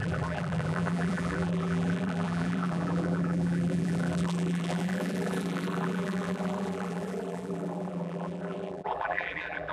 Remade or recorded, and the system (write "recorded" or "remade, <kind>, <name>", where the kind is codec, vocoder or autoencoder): remade, vocoder, BigVGAN v2